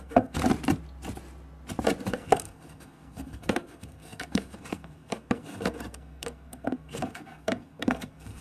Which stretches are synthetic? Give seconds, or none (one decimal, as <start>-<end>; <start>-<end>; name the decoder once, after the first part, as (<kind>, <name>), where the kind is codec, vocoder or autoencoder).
0.0-0.4 (codec, SNAC); 2.1-8.4